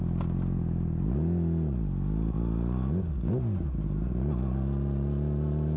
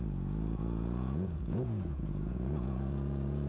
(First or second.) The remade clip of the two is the second